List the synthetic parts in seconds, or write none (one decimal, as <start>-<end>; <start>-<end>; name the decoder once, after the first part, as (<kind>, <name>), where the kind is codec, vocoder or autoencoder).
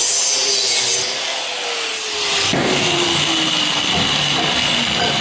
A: none